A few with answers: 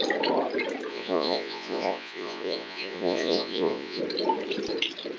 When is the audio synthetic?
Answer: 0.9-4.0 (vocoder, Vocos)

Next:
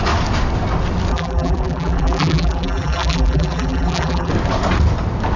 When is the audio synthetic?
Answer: 1.1-4.3 (vocoder, BigVGAN v2)

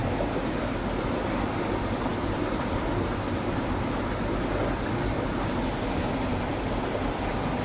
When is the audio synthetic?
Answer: 2.1-4.1 (vocoder, BigVGAN v2)

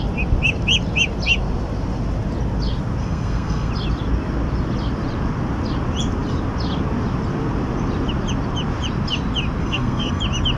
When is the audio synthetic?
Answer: 3.0-3.7 (codec, SNAC); 9.6-10.2

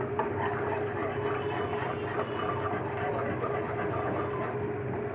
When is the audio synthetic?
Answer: none

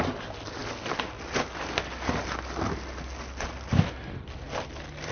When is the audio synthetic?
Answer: none